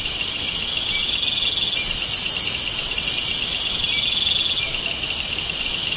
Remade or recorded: recorded